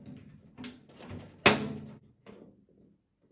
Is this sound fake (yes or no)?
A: no